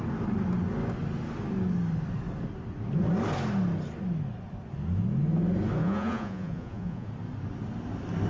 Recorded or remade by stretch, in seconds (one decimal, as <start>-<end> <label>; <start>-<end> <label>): 0.0-5.8 recorded; 5.8-7.1 remade; 7.1-8.3 recorded